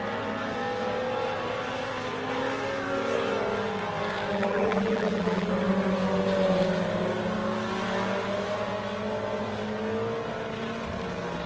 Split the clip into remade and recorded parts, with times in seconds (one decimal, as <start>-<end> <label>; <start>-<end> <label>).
0.0-4.3 recorded; 4.3-5.5 remade; 5.5-11.5 recorded